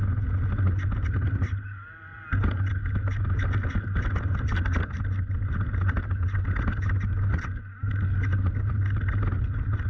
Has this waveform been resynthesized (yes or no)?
no